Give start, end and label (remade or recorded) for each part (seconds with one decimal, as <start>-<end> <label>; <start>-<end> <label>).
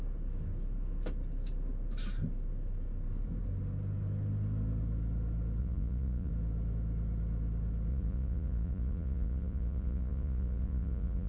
0.0-5.6 recorded; 5.6-6.3 remade; 6.3-7.9 recorded; 7.9-11.3 remade